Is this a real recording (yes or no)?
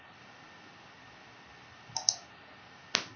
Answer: yes